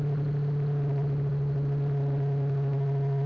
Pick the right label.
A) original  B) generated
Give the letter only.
A